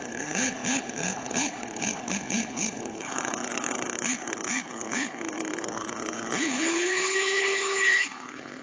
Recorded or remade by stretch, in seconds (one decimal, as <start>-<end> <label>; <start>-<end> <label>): 0.0-8.6 remade

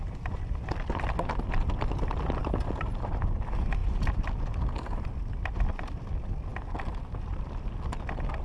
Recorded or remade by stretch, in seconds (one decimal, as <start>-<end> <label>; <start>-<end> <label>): 0.0-8.4 recorded

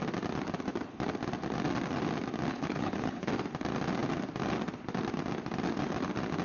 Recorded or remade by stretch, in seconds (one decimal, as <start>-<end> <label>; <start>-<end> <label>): 0.0-2.5 recorded; 2.5-3.3 remade; 3.3-6.4 recorded

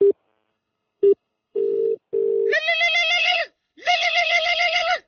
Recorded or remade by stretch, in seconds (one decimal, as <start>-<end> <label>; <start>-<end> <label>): 0.0-0.5 recorded; 0.5-2.0 remade; 2.0-3.2 recorded; 3.2-5.1 remade

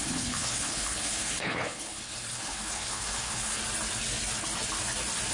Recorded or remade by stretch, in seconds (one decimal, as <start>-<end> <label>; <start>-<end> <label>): 0.0-3.6 remade; 3.6-5.3 recorded